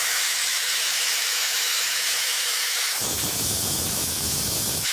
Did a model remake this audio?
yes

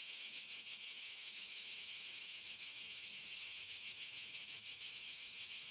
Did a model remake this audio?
yes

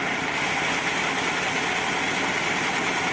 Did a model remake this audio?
no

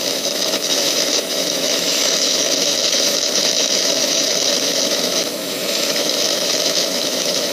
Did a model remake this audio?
yes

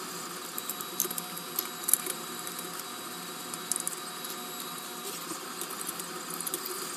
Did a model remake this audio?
no